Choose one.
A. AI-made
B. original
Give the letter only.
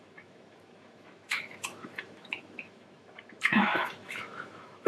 A